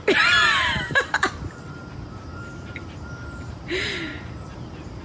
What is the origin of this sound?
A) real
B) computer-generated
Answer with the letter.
B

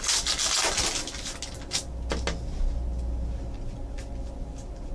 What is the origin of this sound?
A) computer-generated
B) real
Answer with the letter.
B